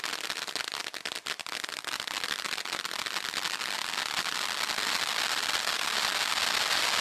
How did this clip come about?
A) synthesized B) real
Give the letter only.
B